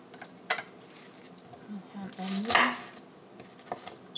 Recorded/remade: recorded